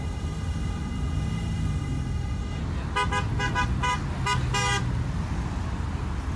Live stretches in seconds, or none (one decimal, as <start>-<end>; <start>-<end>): 2.6-6.4